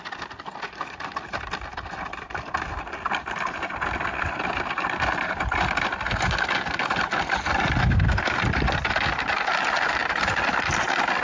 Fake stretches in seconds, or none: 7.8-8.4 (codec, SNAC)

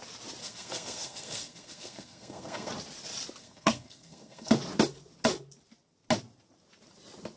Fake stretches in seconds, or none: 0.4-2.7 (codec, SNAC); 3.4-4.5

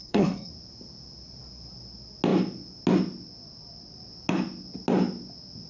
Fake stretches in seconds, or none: 0.0-0.5 (codec, SNAC)